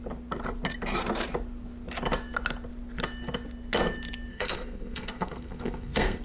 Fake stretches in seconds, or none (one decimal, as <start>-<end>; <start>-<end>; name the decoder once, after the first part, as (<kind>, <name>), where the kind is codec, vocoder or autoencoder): 4.3-6.2 (codec, SNAC)